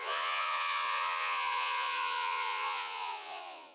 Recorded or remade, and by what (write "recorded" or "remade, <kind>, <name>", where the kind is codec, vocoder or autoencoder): remade, vocoder, Vocos